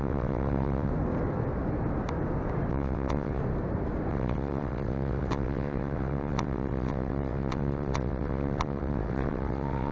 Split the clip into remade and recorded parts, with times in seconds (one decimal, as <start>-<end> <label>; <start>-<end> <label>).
0.0-0.9 remade; 0.9-2.7 recorded; 2.7-3.4 remade; 3.4-4.1 recorded; 4.1-9.9 remade